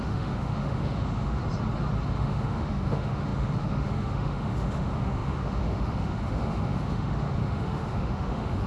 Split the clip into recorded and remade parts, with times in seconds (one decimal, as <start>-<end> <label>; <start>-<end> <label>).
0.0-1.4 remade; 1.4-2.1 recorded; 2.1-8.7 remade